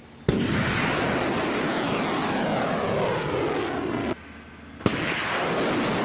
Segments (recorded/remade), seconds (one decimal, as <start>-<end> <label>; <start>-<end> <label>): 0.0-1.7 recorded; 1.7-2.6 remade; 2.6-4.0 recorded; 4.0-4.6 remade; 4.6-6.0 recorded